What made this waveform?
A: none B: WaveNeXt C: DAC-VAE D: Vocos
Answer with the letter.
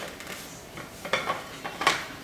A